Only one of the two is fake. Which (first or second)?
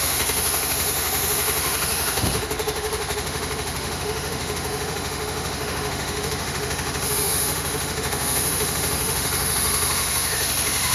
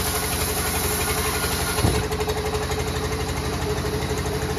first